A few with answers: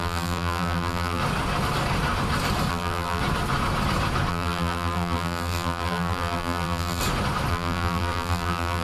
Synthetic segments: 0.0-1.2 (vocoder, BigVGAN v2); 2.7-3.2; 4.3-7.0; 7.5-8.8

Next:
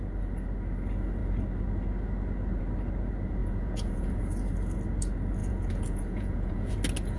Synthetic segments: 3.4-4.2 (vocoder, Vocos); 5.4-6.7

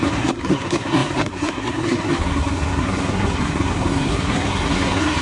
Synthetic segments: 0.0-5.2 (codec, SNAC)

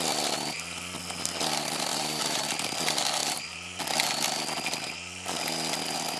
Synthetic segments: 1.9-2.5 (vocoder, BigVGAN v2); 3.2-3.8

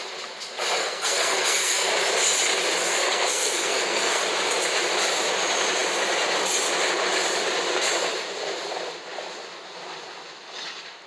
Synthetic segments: 0.8-1.9 (codec, SNAC); 2.9-4.2